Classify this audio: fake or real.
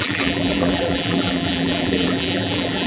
fake